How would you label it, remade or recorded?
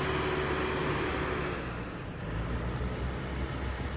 recorded